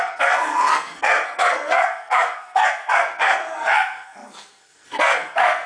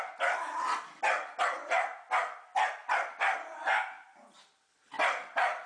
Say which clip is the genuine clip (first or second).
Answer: second